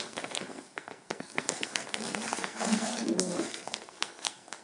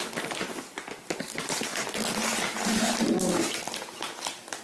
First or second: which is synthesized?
first